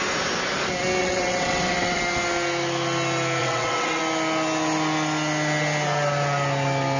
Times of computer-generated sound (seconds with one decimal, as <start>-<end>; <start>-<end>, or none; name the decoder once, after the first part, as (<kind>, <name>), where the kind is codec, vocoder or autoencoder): 1.0-2.0 (vocoder, WaveNeXt); 3.4-4.0